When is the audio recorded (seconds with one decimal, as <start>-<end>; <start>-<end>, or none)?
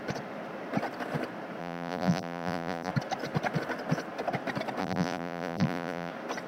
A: 0.0-1.6; 2.9-4.8; 6.1-6.5